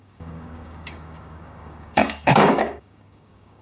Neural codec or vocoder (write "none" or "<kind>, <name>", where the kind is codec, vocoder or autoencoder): codec, DAC